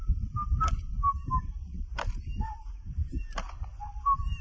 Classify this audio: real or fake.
fake